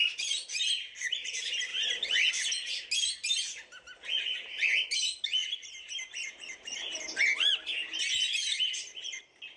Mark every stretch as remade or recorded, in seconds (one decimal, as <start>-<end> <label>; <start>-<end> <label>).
0.0-1.7 recorded; 1.7-2.3 remade; 2.3-5.4 recorded; 5.4-7.0 remade; 7.0-9.6 recorded